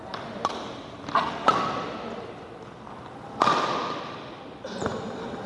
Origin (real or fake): real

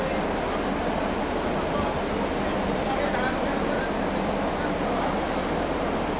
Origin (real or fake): real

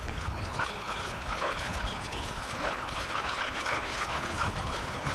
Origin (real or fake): fake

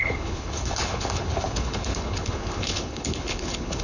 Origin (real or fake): fake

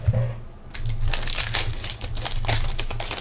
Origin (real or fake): real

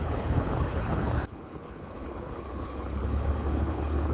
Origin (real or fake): fake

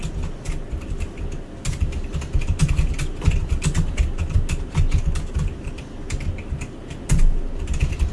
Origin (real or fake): real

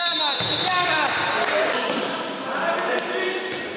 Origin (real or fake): real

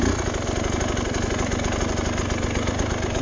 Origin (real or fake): real